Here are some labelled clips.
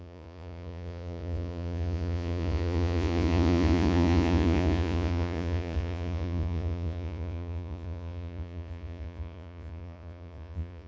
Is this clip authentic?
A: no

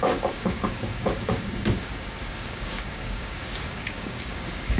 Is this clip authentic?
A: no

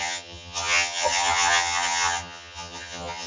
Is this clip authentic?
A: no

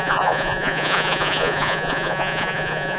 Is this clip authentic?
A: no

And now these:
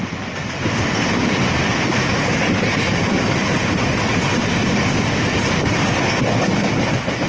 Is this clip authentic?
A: yes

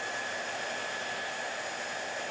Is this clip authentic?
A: yes